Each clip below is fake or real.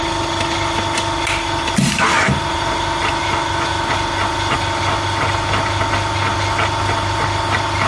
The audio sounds real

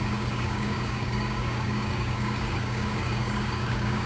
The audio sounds fake